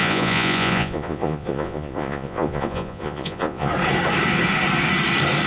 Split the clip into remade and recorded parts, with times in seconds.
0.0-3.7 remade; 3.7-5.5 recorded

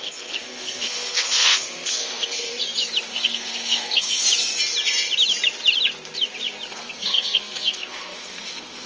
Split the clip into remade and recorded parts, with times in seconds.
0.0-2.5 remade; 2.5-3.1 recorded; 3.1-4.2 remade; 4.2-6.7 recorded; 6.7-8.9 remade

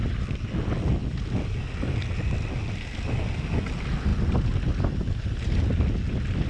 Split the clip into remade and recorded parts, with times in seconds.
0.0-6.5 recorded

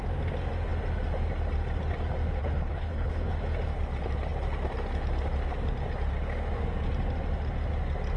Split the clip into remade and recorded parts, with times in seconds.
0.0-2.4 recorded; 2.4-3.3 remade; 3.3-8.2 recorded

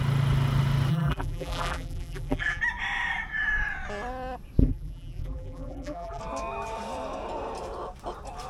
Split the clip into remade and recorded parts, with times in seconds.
0.0-0.9 recorded; 0.9-2.6 remade; 2.6-4.6 recorded; 4.6-6.2 remade; 6.2-8.5 recorded

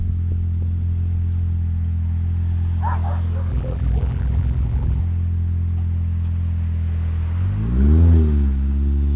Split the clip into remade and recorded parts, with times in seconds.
0.0-3.5 recorded; 3.5-5.0 remade; 5.0-9.2 recorded

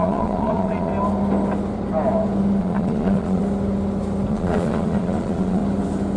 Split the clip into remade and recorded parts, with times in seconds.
0.0-0.9 remade; 0.9-2.6 recorded; 2.6-3.4 remade; 3.4-4.3 recorded; 4.3-5.6 remade; 5.6-6.2 recorded

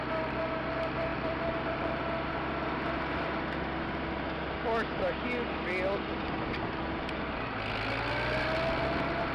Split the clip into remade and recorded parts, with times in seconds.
0.0-1.1 recorded; 1.1-2.0 remade; 2.0-9.3 recorded